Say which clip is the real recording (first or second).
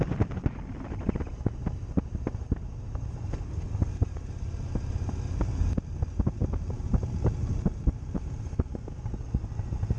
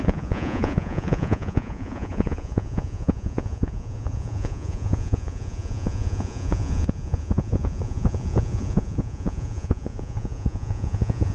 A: first